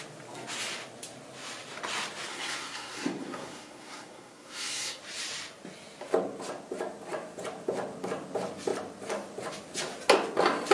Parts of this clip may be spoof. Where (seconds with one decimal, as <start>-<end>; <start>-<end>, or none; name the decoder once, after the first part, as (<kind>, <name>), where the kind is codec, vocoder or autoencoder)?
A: 2.3-5.0 (codec, SNAC)